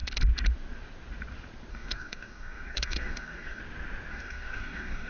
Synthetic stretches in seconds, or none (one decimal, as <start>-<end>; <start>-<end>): 1.7-3.6; 4.1-5.1